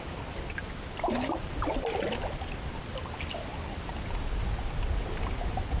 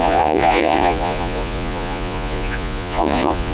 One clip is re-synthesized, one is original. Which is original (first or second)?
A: first